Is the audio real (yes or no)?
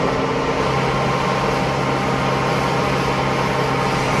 yes